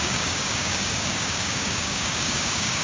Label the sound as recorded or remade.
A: remade